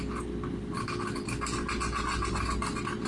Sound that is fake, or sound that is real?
real